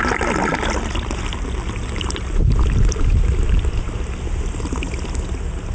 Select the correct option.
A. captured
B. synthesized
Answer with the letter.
A